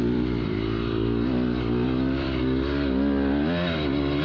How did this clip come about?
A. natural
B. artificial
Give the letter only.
B